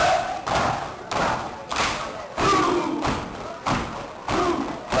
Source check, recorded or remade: remade